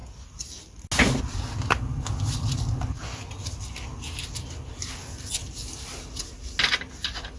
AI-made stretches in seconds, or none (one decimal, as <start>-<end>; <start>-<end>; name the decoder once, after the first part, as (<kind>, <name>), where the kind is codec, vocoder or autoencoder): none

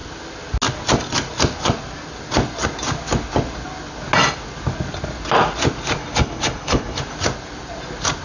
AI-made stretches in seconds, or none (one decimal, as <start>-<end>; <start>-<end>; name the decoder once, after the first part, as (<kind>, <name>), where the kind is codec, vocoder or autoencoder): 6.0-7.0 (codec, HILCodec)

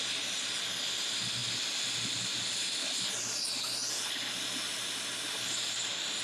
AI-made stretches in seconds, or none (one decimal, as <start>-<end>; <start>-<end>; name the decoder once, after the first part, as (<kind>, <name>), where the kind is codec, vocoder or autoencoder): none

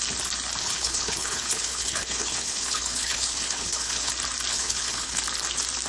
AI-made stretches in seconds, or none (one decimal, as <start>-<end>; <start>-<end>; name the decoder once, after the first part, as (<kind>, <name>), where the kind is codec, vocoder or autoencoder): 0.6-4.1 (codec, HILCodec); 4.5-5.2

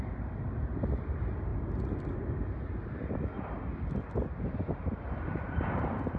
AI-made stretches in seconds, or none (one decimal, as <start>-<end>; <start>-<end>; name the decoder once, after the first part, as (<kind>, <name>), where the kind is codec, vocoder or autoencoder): none